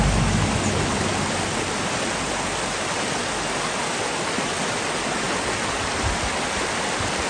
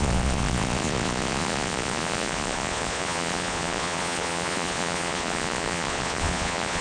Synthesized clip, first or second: second